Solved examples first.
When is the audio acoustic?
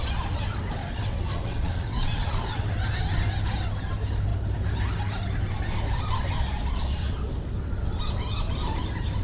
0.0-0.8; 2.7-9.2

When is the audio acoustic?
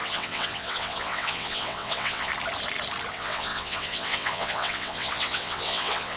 2.3-3.1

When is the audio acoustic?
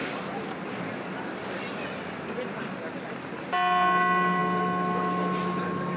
0.0-6.0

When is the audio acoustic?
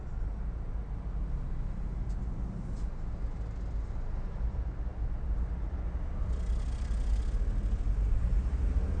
0.0-9.0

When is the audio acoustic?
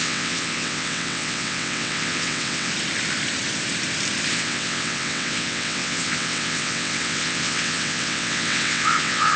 2.7-4.3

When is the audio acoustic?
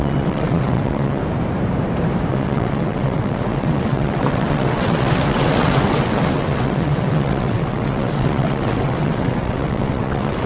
1.2-2.3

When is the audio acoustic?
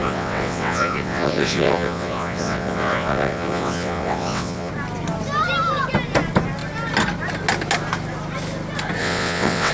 4.7-9.0